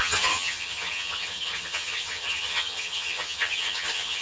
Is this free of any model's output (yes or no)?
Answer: no